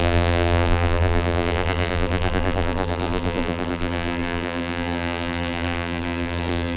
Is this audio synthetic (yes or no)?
yes